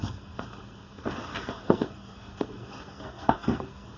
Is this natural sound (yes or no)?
no